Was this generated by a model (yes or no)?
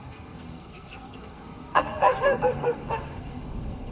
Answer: yes